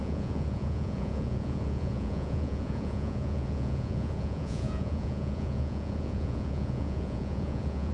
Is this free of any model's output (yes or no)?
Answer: no